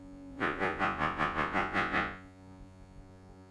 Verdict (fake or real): fake